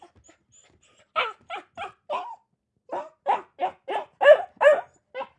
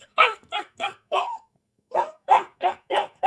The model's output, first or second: second